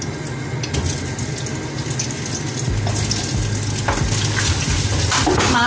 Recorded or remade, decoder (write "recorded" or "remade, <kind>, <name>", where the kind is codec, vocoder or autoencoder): recorded